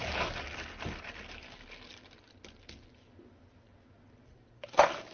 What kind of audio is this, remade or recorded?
recorded